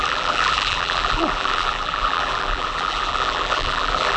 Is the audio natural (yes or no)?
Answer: no